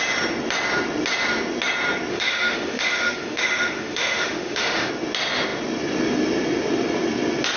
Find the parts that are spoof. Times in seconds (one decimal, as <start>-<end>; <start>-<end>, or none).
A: 2.1-4.9